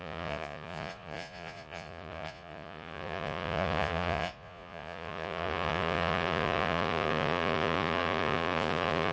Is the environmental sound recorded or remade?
remade